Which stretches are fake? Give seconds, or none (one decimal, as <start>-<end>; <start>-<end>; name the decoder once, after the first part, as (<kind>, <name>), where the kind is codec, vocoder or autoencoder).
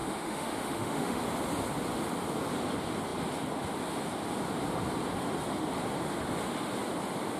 0.0-1.2 (autoencoder, DAC-VAE)